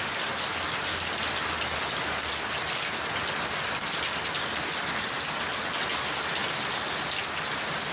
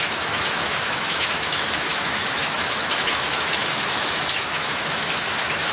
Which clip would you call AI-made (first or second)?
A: second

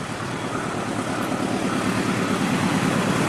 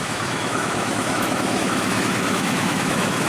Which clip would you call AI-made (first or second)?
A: second